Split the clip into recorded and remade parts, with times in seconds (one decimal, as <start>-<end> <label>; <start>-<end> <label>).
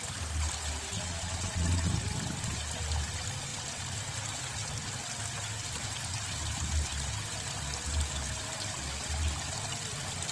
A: 0.0-0.9 recorded; 0.9-1.9 remade; 1.9-10.3 recorded